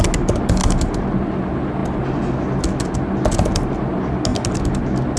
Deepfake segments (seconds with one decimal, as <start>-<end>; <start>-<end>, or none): none

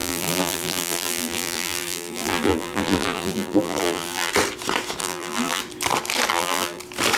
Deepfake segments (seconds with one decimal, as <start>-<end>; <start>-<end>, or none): 0.0-4.3; 5.0-5.6; 6.3-6.8

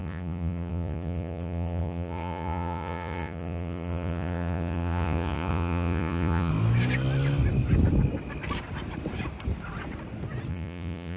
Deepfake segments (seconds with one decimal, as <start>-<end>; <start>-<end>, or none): 0.0-6.5; 10.5-11.2

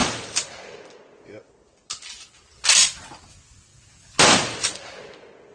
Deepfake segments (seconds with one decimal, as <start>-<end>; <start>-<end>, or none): none